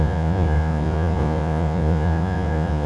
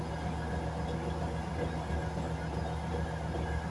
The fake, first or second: first